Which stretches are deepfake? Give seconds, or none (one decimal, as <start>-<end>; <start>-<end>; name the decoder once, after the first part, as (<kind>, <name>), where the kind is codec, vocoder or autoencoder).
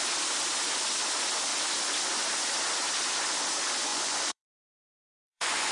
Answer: 3.9-5.7 (vocoder, Vocos)